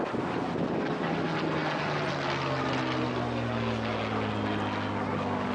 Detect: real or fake real